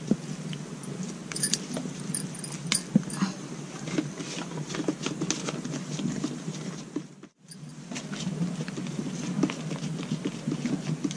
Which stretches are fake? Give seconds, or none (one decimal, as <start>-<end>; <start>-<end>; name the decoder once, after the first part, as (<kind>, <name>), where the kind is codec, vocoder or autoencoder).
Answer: none